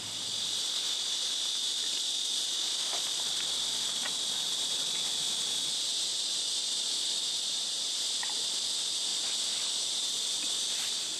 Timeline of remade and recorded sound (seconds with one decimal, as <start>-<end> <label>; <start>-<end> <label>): 0.0-9.1 remade; 9.1-10.3 recorded; 10.3-11.2 remade